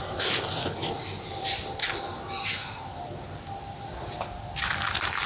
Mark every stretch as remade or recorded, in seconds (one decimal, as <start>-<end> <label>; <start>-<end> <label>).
0.0-0.8 recorded; 0.8-2.4 remade; 2.4-2.9 recorded; 2.9-4.2 remade; 4.2-5.3 recorded